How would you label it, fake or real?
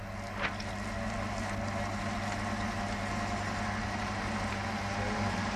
real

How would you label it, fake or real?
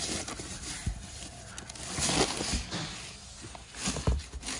real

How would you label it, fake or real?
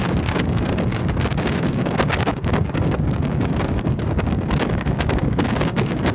fake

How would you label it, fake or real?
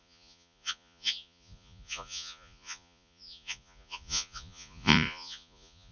fake